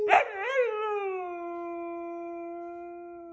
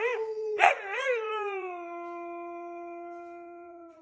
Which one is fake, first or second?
second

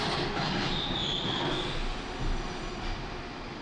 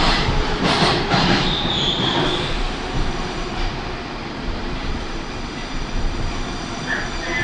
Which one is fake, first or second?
second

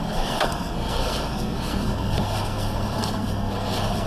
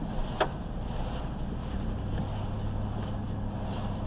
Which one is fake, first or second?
first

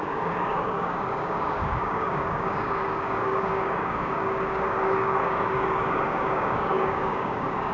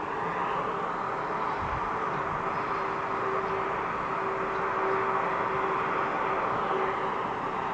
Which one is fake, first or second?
first